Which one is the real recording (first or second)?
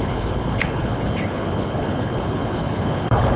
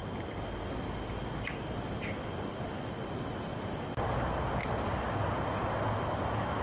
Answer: second